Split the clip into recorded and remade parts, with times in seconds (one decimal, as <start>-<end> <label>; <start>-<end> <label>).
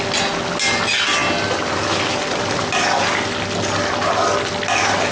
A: 0.0-5.1 recorded